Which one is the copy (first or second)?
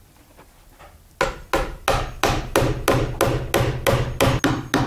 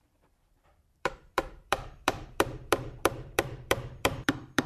second